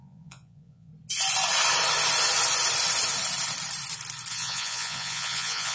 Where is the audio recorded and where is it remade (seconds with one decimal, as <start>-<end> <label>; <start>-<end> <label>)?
0.0-0.9 remade; 0.9-4.3 recorded; 4.3-5.7 remade